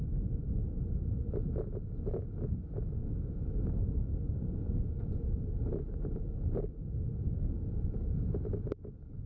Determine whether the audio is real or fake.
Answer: real